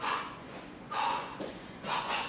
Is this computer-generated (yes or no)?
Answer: yes